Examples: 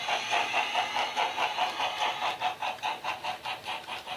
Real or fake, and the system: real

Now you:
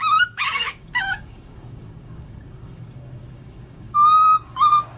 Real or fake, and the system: fake, codec, DAC